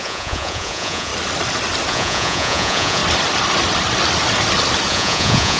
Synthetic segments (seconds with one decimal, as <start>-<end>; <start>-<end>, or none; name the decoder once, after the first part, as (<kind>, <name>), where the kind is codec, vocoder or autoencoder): 0.0-1.1 (vocoder, Vocos); 1.9-3.0; 4.9-5.6